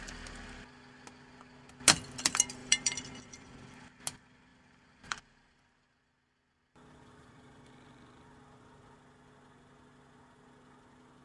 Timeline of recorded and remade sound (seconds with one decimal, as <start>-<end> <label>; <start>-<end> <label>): 0.0-2.6 recorded; 2.6-3.5 remade; 3.5-4.5 recorded; 4.5-7.6 remade; 7.6-11.2 recorded